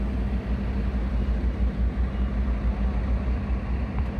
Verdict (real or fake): real